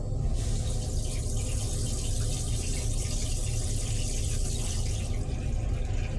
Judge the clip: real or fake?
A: real